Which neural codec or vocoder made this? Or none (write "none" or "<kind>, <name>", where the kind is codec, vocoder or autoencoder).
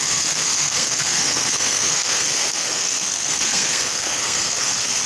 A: codec, SNAC